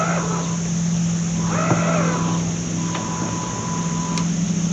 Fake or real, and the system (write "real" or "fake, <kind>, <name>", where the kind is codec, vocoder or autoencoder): real